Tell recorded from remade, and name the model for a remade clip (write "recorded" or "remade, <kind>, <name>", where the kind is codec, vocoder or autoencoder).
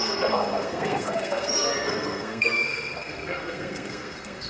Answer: remade, codec, SNAC